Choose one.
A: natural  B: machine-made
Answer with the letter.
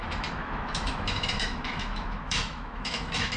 B